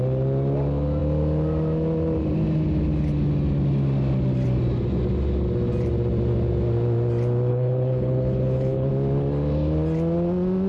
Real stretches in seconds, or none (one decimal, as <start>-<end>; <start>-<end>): 0.0-7.5; 8.9-10.7